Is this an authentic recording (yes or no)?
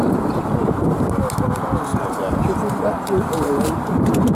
yes